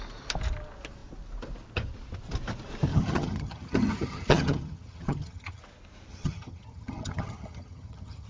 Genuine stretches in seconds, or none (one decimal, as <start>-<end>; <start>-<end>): 0.0-2.9; 5.6-6.1